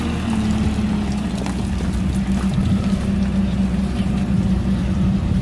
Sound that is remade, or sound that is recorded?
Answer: recorded